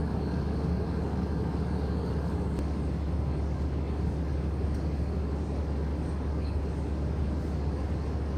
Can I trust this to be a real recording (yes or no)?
no